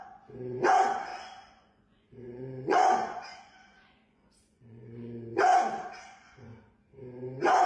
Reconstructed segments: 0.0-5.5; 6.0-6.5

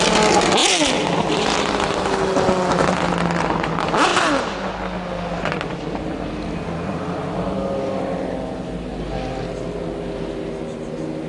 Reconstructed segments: none